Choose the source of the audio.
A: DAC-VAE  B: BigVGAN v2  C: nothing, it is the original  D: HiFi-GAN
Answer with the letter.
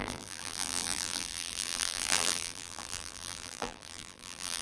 B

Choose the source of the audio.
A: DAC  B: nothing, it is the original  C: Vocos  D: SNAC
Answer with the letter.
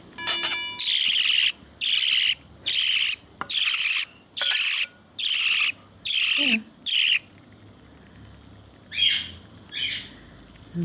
B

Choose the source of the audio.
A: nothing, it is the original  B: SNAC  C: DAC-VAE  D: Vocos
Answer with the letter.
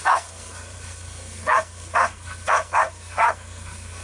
B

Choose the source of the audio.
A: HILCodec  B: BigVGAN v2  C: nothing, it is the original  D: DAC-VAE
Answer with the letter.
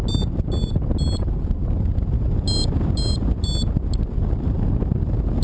C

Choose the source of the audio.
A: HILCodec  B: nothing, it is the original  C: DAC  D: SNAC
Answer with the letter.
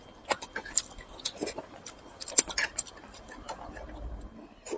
B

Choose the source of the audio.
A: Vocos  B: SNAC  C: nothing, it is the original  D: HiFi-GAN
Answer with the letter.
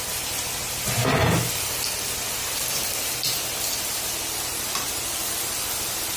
C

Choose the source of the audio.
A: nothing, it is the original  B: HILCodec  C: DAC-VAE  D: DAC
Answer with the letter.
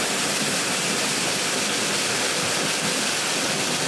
A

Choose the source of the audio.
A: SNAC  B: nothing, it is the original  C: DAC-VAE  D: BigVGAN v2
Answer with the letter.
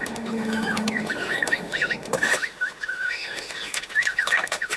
C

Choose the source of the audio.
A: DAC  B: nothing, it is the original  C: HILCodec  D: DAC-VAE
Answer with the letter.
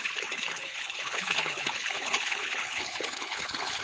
C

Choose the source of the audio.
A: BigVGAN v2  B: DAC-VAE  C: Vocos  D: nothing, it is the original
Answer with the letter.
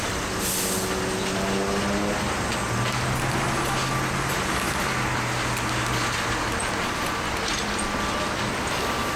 D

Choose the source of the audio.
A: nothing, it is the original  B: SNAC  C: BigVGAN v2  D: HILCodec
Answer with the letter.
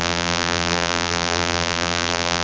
C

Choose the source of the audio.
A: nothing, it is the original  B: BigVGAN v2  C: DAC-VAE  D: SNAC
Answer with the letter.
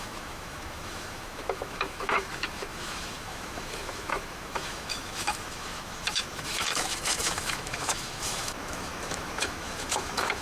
C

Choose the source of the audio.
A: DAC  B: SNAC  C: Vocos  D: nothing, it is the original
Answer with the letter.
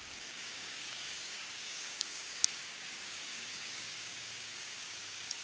A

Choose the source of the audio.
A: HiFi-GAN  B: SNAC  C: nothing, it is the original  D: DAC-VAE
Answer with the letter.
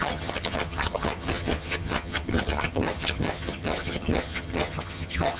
A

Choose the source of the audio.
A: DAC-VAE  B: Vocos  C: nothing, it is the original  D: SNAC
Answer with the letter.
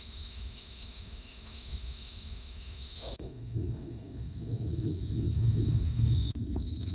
A